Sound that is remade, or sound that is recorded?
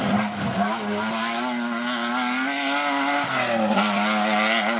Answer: recorded